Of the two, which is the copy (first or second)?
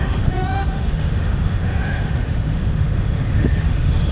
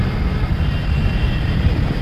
first